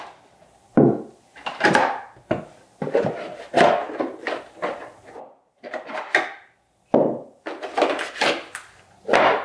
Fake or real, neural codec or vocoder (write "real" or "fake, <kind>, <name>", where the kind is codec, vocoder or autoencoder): real